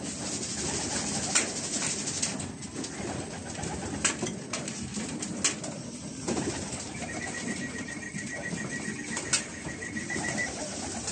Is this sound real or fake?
real